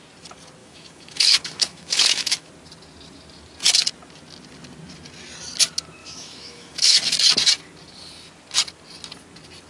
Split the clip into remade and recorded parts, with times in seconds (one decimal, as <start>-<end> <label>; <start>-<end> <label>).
0.0-0.6 recorded; 0.6-2.5 remade; 2.5-6.0 recorded; 6.0-7.0 remade; 7.0-9.7 recorded